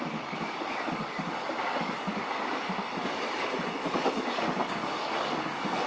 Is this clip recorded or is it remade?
remade